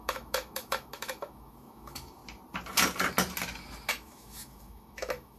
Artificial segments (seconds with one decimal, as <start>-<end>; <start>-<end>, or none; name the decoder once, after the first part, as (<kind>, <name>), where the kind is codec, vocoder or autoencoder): 0.0-2.2 (autoencoder, DAC-VAE); 3.9-5.4